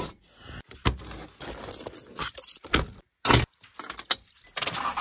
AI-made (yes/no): no